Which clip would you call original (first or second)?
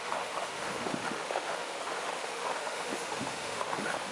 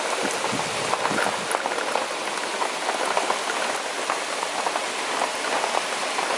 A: second